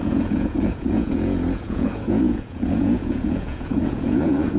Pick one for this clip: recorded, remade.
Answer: remade